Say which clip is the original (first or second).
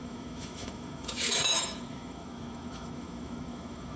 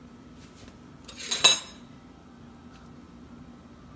second